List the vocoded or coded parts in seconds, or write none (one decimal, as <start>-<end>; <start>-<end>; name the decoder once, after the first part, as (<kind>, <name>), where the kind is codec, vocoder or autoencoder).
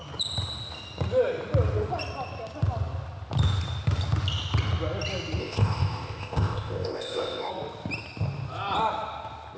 5.4-7.5 (codec, ZipCodec)